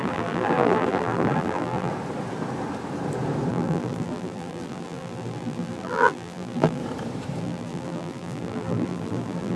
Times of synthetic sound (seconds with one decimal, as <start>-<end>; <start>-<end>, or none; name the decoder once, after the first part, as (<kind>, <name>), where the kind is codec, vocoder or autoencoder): 0.0-1.9 (vocoder, BigVGAN v2); 3.5-6.8; 7.4-9.6